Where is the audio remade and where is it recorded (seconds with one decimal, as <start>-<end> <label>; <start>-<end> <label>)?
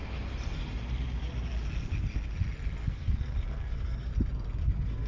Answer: 0.0-2.8 recorded; 2.8-4.1 remade; 4.1-4.6 recorded; 4.6-5.1 remade